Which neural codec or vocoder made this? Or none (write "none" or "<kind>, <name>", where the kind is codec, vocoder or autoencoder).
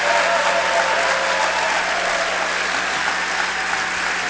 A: none